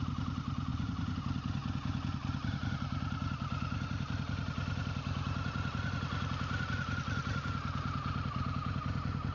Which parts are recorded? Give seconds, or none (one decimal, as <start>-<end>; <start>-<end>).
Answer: 0.0-0.7; 1.2-9.3